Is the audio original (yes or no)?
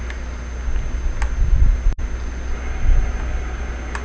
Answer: yes